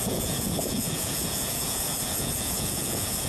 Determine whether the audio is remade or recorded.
remade